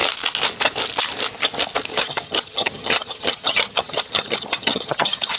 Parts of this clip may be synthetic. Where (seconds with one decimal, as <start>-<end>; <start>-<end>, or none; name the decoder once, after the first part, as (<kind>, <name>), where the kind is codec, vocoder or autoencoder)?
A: 1.9-5.4 (vocoder, HiFi-GAN)